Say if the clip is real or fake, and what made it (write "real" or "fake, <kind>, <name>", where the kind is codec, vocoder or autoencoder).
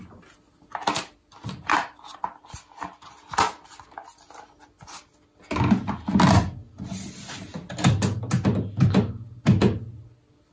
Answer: real